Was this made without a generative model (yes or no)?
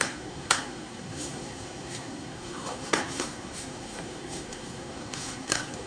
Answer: no